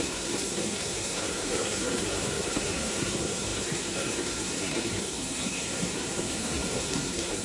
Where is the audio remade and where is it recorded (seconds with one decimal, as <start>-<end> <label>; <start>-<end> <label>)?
0.0-7.4 remade